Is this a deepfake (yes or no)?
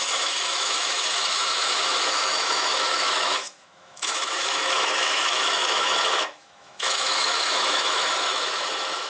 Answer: yes